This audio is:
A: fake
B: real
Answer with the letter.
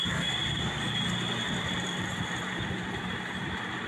B